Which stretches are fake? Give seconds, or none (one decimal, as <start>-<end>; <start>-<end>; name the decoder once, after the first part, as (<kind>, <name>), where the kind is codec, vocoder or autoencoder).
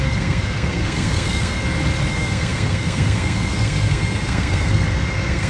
0.0-1.6 (codec, SNAC); 2.1-5.5